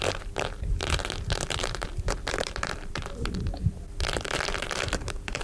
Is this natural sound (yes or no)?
no